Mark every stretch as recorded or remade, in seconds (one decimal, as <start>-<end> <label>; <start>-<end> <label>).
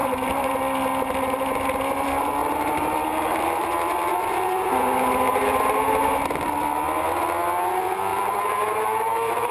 0.0-0.5 remade; 0.5-2.4 recorded; 2.4-3.6 remade; 3.6-8.1 recorded; 8.1-9.5 remade